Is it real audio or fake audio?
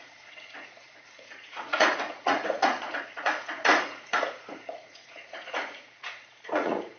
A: fake